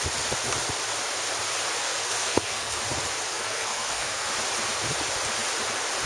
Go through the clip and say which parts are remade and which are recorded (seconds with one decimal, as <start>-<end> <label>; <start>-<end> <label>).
0.0-1.8 recorded; 1.8-2.8 remade; 2.8-3.3 recorded; 3.3-4.3 remade; 4.3-6.1 recorded